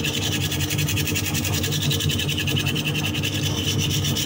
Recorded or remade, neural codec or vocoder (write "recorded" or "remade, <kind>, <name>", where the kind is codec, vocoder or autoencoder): recorded